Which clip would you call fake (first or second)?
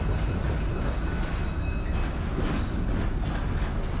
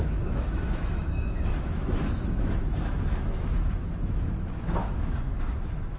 second